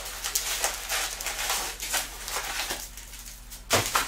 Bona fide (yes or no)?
yes